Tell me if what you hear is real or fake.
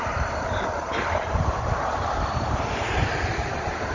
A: fake